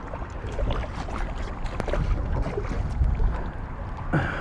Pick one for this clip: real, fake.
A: real